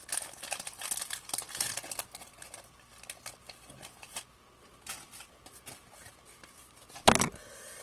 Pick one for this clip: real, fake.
real